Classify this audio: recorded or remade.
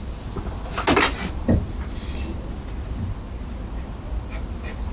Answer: recorded